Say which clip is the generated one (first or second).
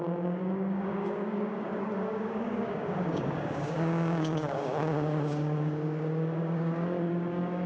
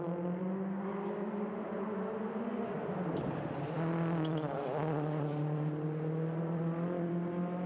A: first